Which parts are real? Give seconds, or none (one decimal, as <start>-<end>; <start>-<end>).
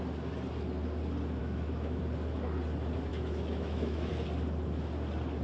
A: 0.0-1.4; 2.0-3.1; 4.1-5.4